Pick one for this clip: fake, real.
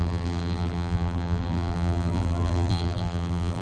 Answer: fake